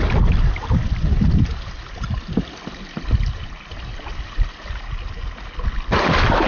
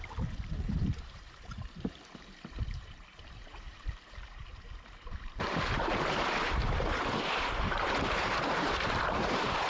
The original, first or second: first